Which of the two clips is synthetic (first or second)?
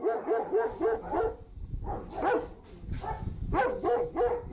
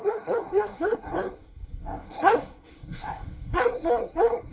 second